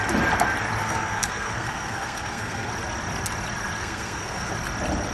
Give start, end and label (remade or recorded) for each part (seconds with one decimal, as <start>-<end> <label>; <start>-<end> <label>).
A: 0.0-0.8 recorded; 0.8-2.7 remade; 2.7-3.8 recorded; 3.8-4.5 remade; 4.5-5.1 recorded